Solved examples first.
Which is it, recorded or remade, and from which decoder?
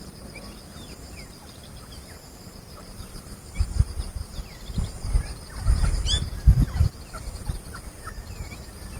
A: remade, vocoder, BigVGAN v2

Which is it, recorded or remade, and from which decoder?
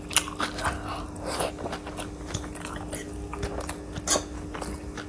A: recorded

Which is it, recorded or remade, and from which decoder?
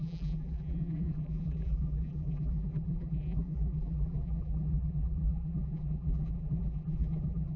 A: remade, vocoder, BigVGAN v2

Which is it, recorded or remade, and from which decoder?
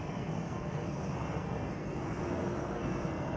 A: remade, codec, SNAC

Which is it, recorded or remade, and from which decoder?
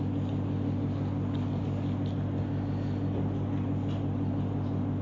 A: recorded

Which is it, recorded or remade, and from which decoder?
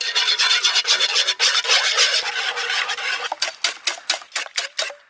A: recorded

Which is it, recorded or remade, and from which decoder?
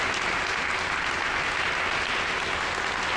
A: recorded